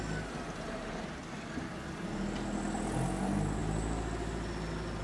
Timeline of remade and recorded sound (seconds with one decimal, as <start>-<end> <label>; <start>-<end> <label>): 0.0-1.2 recorded; 1.2-2.0 remade; 2.0-5.0 recorded